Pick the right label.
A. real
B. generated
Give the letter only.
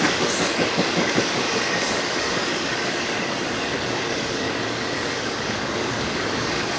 B